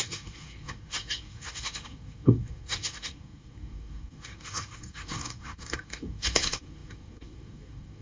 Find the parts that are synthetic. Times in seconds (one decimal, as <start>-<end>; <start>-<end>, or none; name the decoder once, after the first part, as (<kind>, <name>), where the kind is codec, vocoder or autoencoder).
0.0-8.0 (codec, SNAC)